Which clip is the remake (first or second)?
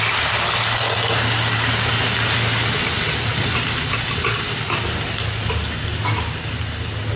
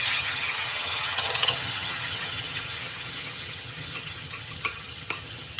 second